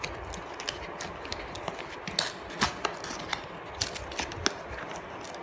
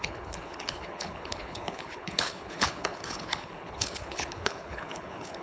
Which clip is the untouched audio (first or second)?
first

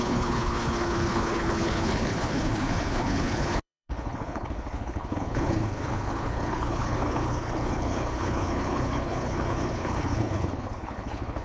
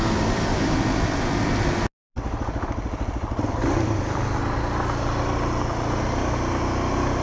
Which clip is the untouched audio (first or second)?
second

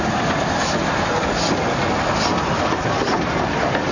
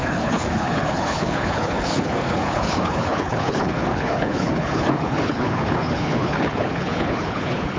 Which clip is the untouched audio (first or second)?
first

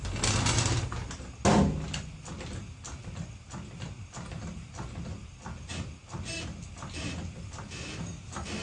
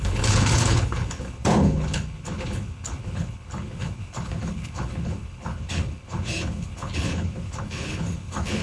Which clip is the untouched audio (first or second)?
first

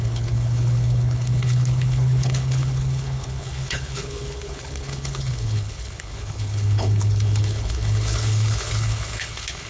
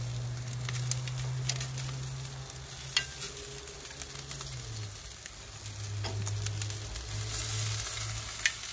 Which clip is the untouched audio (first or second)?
second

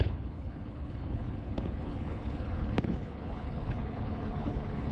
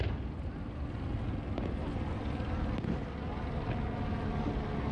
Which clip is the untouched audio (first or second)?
second